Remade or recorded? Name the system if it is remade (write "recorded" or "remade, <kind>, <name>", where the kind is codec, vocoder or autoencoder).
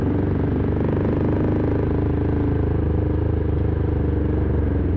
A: recorded